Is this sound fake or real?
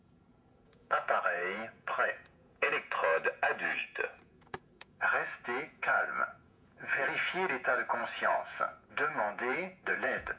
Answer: fake